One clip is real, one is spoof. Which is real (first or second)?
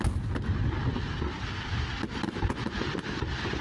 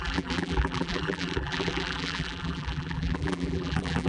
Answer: first